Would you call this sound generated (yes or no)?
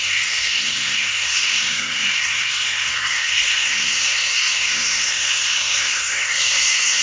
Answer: yes